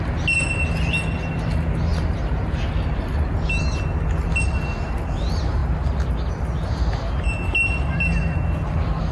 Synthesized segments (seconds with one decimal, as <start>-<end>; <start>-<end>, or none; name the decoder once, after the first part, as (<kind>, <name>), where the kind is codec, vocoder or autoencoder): none